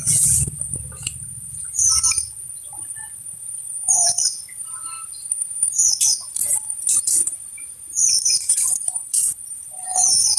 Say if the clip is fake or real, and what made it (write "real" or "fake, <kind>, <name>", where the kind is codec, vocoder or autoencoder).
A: fake, vocoder, BigVGAN v2